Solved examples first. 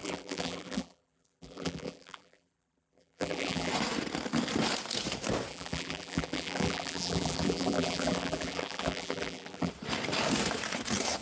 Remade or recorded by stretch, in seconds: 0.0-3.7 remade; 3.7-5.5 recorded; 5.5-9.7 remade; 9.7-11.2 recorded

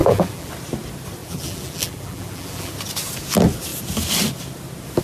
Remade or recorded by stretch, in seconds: 0.0-0.5 remade; 0.5-1.2 recorded; 1.2-2.7 remade; 2.7-5.0 recorded

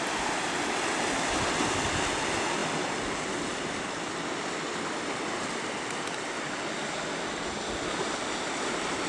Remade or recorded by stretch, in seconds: 0.0-9.1 recorded

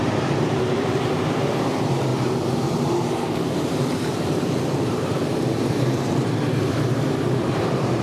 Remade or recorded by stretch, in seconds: 0.0-8.0 remade

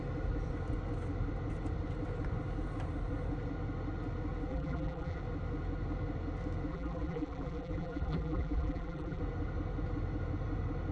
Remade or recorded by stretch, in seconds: 0.0-4.5 recorded; 4.5-5.2 remade; 5.2-6.7 recorded; 6.7-9.2 remade; 9.2-10.9 recorded